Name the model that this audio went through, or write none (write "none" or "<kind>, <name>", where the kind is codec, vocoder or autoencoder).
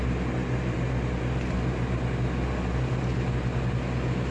none